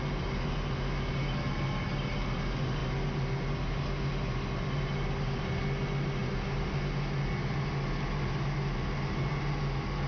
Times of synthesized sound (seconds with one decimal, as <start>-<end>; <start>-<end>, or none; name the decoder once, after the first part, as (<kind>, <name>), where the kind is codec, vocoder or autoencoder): none